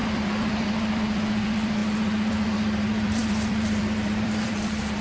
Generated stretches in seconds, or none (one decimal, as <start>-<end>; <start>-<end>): 0.0-5.0